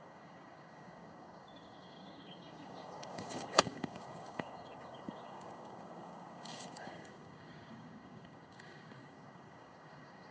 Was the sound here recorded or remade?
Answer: remade